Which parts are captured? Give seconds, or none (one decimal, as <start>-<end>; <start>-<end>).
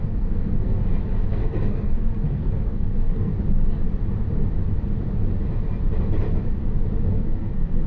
0.8-1.3; 3.3-7.1